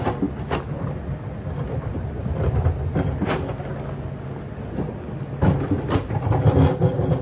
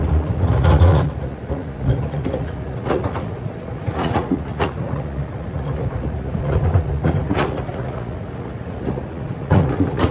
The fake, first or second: second